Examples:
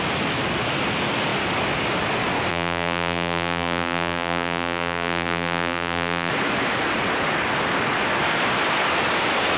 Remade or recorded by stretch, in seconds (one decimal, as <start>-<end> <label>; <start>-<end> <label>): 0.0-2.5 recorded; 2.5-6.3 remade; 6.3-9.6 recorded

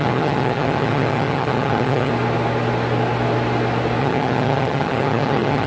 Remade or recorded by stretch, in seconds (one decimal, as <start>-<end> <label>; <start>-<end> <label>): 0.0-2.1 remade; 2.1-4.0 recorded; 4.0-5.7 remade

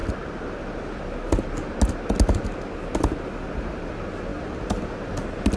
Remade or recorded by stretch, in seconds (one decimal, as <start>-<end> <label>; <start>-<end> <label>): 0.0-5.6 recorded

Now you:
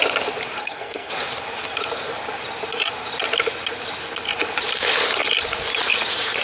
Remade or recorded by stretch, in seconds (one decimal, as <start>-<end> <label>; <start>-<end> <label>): 0.0-0.6 recorded; 0.6-1.1 remade; 1.1-6.4 recorded

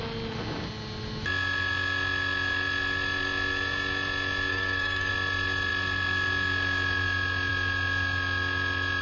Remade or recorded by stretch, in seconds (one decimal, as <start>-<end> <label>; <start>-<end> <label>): 0.0-4.5 recorded; 4.5-5.1 remade; 5.1-9.0 recorded

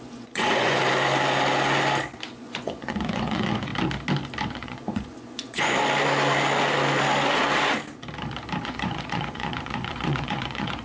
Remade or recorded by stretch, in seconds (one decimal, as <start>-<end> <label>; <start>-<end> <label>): 0.0-0.8 remade; 0.8-2.3 recorded; 2.3-3.7 remade; 3.7-4.5 recorded; 4.5-5.8 remade; 5.8-8.6 recorded; 8.6-10.8 remade

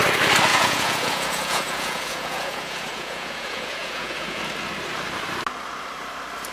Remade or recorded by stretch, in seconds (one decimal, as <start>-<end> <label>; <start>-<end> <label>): 0.0-0.5 recorded; 0.5-4.4 remade; 4.4-6.5 recorded